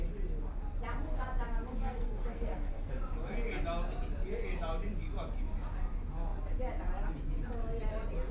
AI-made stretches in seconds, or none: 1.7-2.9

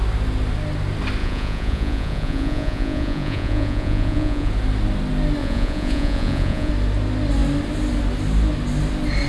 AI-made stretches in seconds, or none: 1.2-4.5; 5.4-6.7

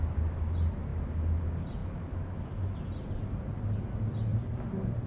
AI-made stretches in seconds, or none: 4.3-5.1

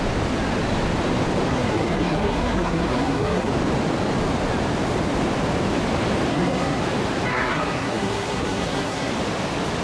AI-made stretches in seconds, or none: 1.5-3.5; 6.3-6.8; 7.3-9.1

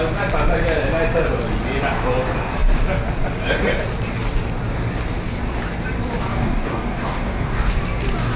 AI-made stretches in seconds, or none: 6.3-7.7

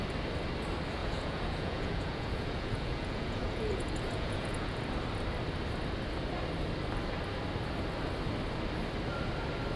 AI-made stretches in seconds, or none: 1.0-4.8

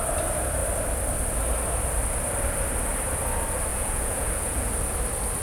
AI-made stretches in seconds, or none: 3.7-4.7